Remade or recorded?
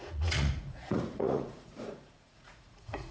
remade